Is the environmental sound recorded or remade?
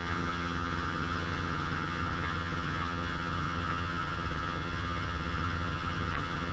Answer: remade